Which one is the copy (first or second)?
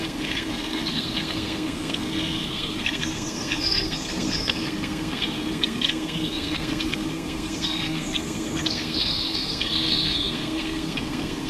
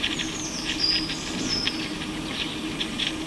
first